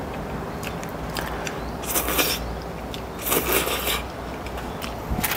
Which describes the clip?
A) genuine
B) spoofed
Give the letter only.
A